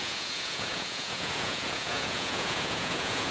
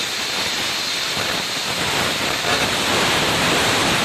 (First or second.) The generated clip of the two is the first